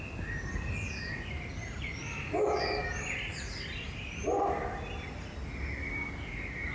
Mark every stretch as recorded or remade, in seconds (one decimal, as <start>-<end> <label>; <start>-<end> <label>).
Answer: 0.0-6.7 recorded